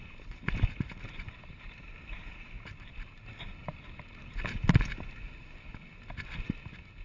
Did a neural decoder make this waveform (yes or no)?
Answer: no